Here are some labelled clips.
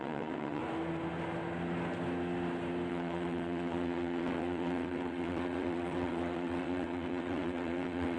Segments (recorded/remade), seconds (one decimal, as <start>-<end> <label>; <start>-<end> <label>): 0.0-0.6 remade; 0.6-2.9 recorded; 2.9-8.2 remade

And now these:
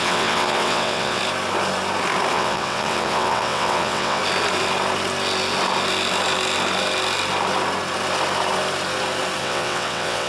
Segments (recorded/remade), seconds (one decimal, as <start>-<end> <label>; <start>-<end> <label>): 0.0-1.2 remade; 1.2-2.3 recorded; 2.3-4.2 remade; 4.2-9.4 recorded; 9.4-10.3 remade

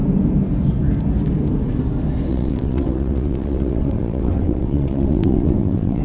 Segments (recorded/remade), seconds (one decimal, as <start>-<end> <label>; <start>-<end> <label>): 0.0-2.3 recorded; 2.3-6.0 remade